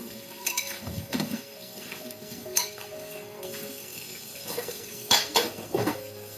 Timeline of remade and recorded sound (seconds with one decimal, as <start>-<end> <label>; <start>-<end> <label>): 0.0-6.4 remade